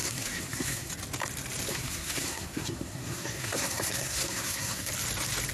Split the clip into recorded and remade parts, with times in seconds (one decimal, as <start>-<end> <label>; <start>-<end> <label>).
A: 0.0-0.9 remade; 0.9-1.7 recorded; 1.7-4.9 remade; 4.9-5.5 recorded